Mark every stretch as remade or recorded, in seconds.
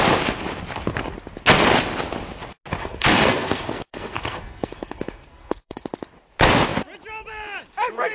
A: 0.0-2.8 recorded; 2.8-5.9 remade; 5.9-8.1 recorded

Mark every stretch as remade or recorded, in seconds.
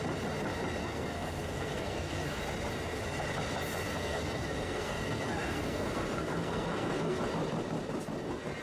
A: 0.0-0.8 recorded; 0.8-2.4 remade; 2.4-3.9 recorded; 3.9-7.2 remade; 7.2-8.6 recorded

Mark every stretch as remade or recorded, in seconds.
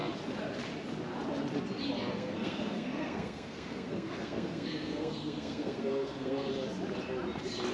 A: 0.0-2.1 recorded; 2.1-6.5 remade; 6.5-7.7 recorded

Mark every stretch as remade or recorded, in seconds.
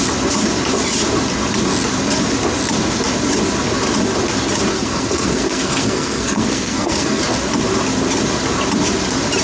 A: 0.0-4.7 recorded; 4.7-7.2 remade; 7.2-9.4 recorded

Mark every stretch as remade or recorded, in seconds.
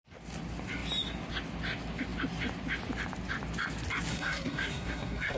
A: 0.0-4.1 recorded; 4.1-5.4 remade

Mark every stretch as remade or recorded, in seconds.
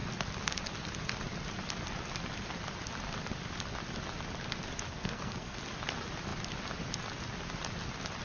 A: 0.0-4.9 recorded; 4.9-5.6 remade; 5.6-8.2 recorded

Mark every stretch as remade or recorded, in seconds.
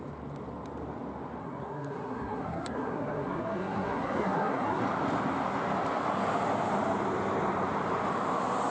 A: 0.0-1.4 recorded; 1.4-4.8 remade; 4.8-8.7 recorded